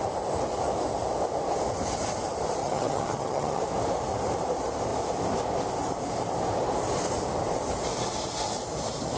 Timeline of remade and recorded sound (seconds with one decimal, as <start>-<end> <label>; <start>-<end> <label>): 0.0-2.6 recorded; 2.6-3.6 remade; 3.6-9.2 recorded